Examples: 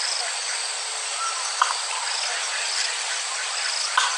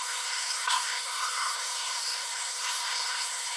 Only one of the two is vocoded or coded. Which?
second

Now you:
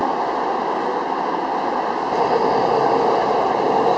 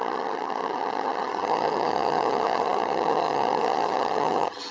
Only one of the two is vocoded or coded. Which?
second